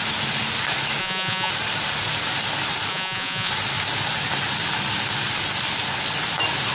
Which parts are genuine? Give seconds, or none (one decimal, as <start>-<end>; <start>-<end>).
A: 0.0-1.0; 1.5-2.9; 3.5-6.7